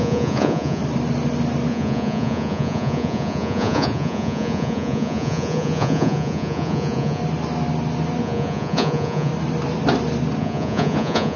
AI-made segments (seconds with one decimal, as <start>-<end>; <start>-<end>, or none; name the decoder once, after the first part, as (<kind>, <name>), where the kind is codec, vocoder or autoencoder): 0.0-0.8 (vocoder, Vocos); 1.7-7.2; 8.2-9.3; 10.4-11.4